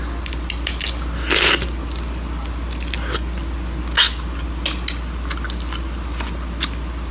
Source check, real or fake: real